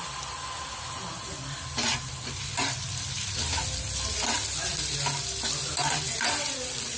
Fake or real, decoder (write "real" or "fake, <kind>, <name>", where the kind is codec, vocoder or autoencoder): real